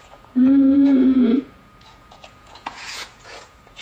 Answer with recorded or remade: remade